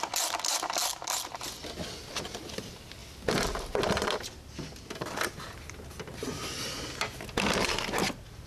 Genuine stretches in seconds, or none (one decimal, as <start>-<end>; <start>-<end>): 0.0-8.5